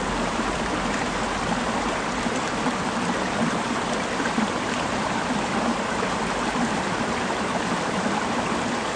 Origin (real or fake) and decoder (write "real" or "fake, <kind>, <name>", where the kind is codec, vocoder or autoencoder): fake, vocoder, BigVGAN v2